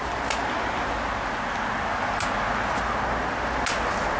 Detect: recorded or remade recorded